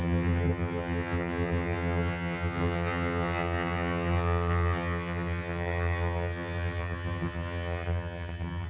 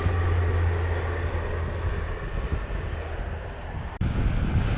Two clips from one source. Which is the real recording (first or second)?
second